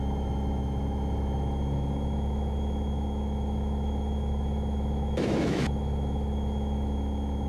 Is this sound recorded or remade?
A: remade